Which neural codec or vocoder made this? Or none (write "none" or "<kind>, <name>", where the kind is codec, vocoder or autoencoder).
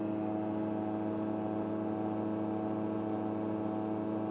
none